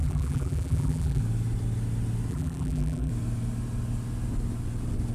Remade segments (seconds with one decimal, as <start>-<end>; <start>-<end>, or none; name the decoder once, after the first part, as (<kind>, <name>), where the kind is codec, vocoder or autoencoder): 0.0-1.2 (vocoder, BigVGAN v2); 2.3-3.1